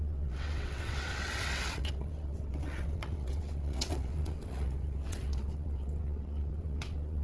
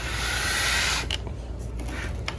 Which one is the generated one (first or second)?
first